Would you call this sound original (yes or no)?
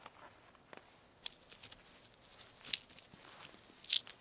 yes